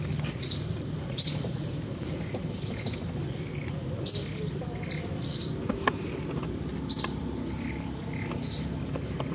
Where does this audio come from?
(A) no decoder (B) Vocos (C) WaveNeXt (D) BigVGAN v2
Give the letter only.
A